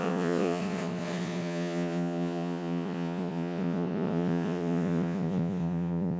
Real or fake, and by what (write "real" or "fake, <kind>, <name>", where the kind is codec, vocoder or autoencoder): fake, vocoder, Vocos